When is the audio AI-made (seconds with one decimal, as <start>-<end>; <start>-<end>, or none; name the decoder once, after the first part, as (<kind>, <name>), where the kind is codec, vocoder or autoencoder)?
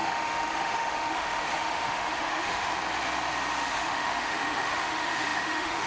0.0-2.7 (autoencoder, DAC-VAE); 3.7-5.9